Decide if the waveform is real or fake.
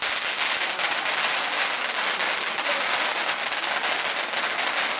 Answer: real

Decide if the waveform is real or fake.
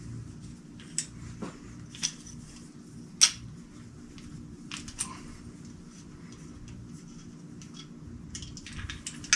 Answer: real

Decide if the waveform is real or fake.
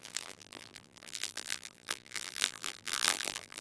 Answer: fake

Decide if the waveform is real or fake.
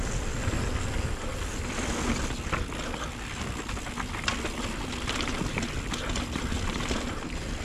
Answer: real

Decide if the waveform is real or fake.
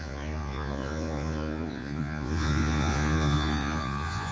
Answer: fake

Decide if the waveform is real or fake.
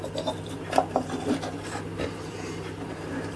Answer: fake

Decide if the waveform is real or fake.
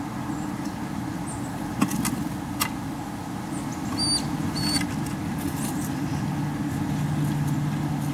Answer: real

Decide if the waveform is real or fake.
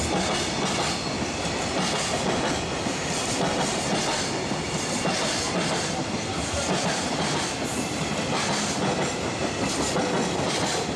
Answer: real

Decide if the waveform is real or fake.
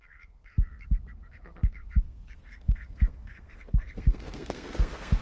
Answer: fake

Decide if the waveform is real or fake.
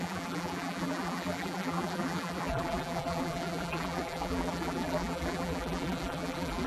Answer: fake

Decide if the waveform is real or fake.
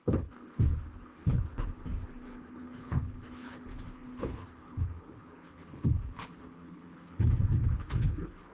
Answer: fake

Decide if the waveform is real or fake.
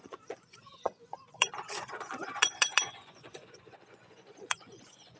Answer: fake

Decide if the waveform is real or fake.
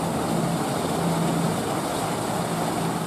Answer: real